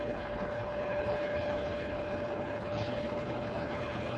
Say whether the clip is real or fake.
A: fake